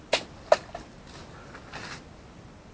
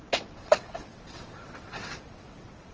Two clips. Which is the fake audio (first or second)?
second